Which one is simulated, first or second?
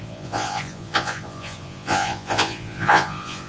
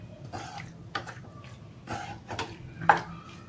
first